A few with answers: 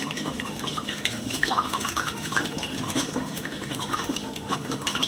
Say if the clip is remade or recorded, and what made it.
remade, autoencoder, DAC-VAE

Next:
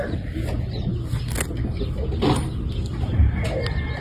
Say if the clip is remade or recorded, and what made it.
recorded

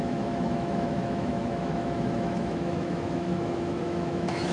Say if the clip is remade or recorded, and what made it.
remade, autoencoder, DAC-VAE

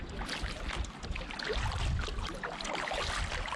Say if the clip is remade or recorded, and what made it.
recorded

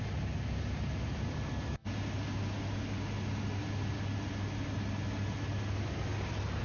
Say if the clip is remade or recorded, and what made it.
recorded